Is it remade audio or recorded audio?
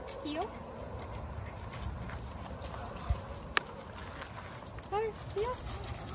recorded